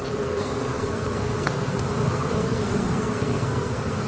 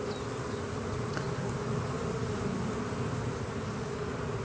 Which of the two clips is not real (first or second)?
first